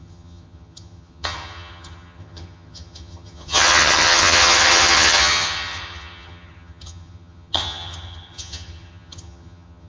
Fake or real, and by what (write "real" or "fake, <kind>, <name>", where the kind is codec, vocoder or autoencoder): fake, vocoder, HiFi-GAN